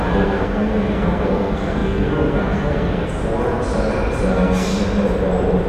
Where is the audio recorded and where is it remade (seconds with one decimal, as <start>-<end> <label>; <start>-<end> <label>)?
0.0-3.2 remade; 3.2-4.3 recorded; 4.3-4.7 remade; 4.7-5.7 recorded